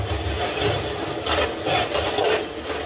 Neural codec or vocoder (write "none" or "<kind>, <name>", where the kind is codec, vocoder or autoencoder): none